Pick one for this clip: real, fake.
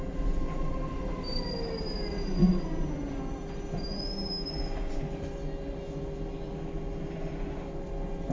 real